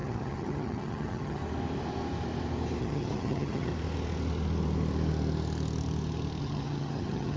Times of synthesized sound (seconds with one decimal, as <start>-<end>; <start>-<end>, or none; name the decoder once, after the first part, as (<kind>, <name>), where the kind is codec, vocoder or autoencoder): 0.0-1.4 (vocoder, HiFi-GAN); 2.8-3.7; 6.4-7.4